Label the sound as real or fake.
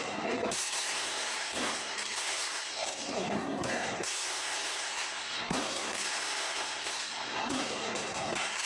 fake